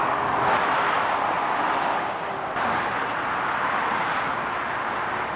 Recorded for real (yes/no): yes